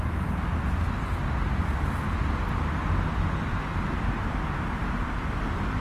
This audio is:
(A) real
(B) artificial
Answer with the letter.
A